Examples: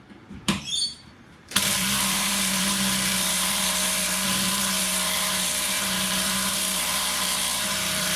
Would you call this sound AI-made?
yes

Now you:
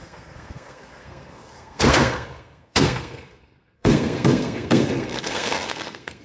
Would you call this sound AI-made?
yes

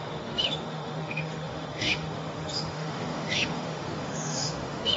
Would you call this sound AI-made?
yes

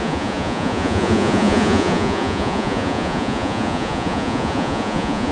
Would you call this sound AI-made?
yes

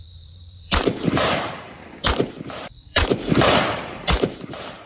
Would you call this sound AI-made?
yes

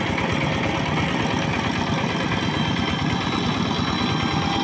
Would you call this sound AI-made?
no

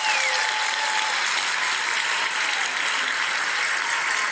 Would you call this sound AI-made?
no